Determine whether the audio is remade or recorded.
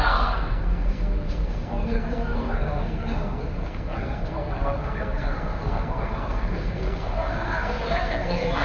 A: remade